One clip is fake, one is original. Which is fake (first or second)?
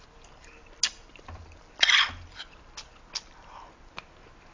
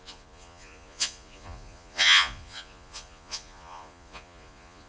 second